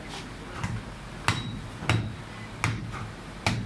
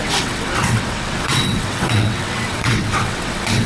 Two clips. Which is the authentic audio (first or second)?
first